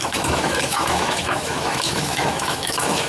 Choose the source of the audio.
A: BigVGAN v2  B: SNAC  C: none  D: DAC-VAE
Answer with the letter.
D